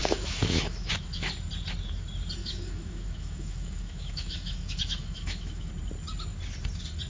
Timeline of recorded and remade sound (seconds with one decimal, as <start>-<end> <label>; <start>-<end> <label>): 0.0-1.3 remade; 1.3-2.4 recorded; 2.4-5.7 remade; 5.7-7.1 recorded